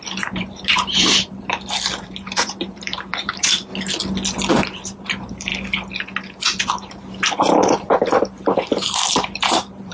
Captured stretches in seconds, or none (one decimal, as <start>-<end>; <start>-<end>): 3.7-4.5; 5.5-6.6